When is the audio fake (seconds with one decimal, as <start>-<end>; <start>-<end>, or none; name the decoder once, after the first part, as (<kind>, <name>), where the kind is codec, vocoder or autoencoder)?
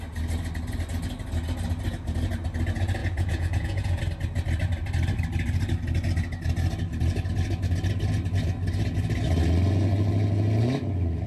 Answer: 3.0-4.0 (vocoder, Vocos)